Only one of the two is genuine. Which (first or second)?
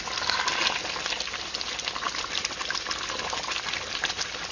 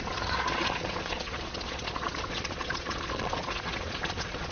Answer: first